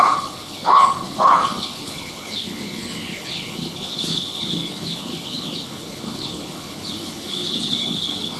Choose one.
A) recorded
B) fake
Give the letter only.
B